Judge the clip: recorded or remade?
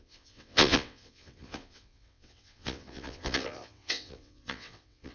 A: remade